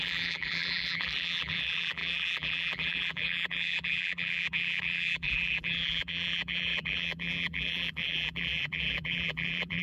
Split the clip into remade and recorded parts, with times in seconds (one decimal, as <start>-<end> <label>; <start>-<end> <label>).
0.0-9.8 remade

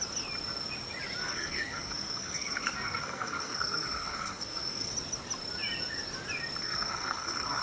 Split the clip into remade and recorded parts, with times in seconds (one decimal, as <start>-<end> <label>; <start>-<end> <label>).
0.0-1.2 recorded; 1.2-4.9 remade; 4.9-6.6 recorded; 6.6-7.6 remade

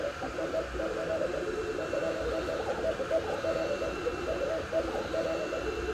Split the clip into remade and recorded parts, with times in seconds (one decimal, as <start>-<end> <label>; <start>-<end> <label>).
0.0-5.9 recorded

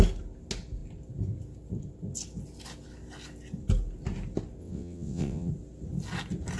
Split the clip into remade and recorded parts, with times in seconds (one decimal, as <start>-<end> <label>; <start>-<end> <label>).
0.0-4.6 recorded; 4.6-5.5 remade; 5.5-6.6 recorded

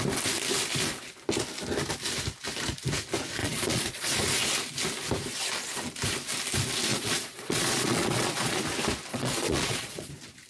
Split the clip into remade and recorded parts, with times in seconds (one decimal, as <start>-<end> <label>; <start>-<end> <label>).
0.0-3.4 recorded; 3.4-4.2 remade; 4.2-6.9 recorded; 6.9-8.6 remade; 8.6-9.1 recorded; 9.1-10.1 remade; 10.1-10.5 recorded

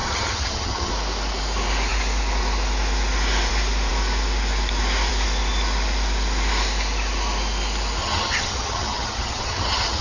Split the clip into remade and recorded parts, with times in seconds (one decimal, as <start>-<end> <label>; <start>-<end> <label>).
0.0-0.9 remade; 0.9-8.0 recorded; 8.0-10.0 remade

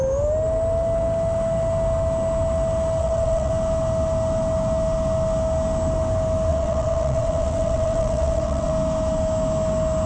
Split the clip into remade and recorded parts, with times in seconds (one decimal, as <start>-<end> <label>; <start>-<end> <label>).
0.0-3.0 recorded; 3.0-3.5 remade; 3.5-6.5 recorded; 6.5-8.7 remade; 8.7-10.1 recorded

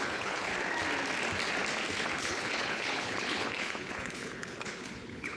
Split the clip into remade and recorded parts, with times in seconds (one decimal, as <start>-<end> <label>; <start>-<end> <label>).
0.0-0.5 remade; 0.5-2.2 recorded; 2.2-5.4 remade